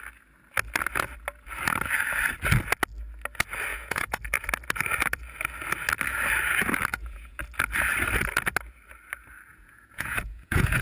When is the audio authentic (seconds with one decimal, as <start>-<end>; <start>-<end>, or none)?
0.0-3.7; 4.2-6.9; 7.4-9.5